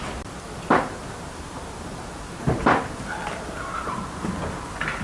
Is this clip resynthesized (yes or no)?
no